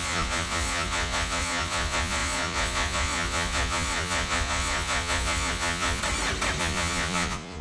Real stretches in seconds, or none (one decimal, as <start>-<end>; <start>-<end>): 6.0-6.6